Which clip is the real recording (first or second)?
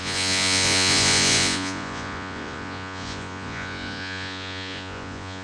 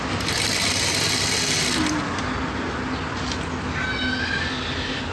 second